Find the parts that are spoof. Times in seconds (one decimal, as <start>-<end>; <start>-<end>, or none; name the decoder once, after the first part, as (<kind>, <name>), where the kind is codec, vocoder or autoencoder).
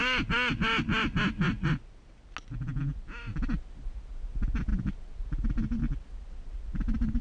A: none